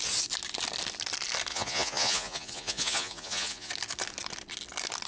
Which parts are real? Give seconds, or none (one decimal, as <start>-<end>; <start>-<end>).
0.0-1.5; 3.7-5.1